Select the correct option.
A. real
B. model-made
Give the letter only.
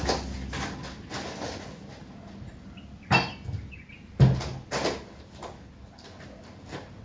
A